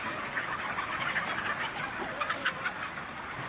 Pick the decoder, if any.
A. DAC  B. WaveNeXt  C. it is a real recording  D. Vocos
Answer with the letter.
C